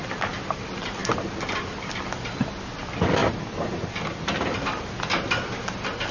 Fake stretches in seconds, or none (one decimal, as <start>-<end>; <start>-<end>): none